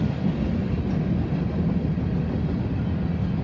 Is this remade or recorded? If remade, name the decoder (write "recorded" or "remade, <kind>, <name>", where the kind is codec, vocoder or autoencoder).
recorded